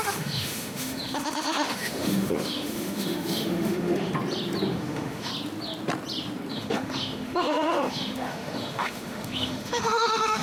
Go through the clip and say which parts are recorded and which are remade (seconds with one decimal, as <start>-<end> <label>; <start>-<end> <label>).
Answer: 0.0-4.1 remade; 4.1-4.7 recorded; 4.7-5.3 remade; 5.3-6.5 recorded; 6.5-10.4 remade